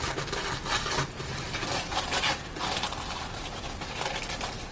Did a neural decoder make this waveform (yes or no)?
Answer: no